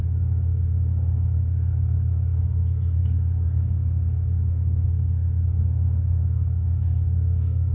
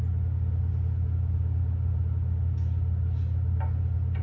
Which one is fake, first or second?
first